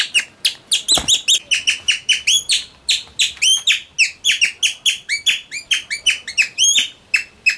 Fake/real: real